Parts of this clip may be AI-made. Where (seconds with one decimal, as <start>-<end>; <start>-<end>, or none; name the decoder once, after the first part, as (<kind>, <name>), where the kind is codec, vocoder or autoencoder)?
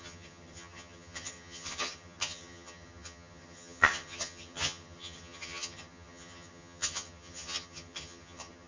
0.0-8.7 (vocoder, HiFi-GAN)